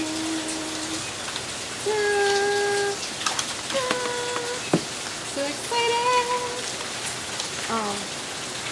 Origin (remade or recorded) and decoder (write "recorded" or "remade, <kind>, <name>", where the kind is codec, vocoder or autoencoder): recorded